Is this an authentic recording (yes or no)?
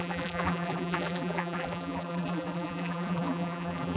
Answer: no